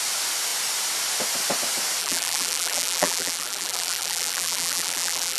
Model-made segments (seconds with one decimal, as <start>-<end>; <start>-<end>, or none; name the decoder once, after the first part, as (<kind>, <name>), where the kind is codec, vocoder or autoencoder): 2.0-5.4 (vocoder, BigVGAN v2)